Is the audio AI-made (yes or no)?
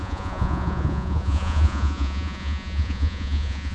yes